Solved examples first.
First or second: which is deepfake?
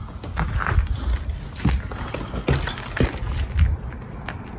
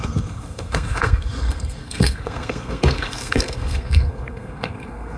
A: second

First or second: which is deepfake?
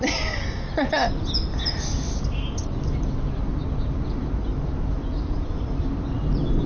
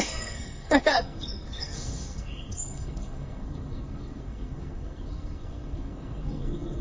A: second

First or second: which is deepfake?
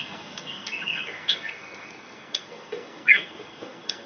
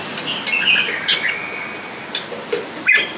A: first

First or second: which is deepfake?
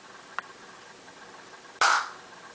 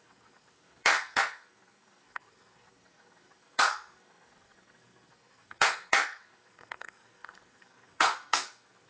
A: second